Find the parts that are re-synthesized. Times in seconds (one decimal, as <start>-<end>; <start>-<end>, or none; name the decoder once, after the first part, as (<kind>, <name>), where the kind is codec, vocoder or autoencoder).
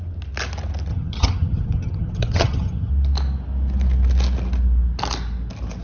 0.9-2.9 (vocoder, HiFi-GAN)